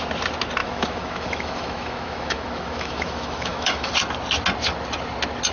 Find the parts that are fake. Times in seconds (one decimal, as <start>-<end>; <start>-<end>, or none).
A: 0.6-3.9